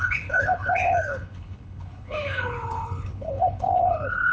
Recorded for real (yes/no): no